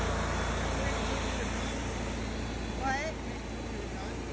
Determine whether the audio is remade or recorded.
recorded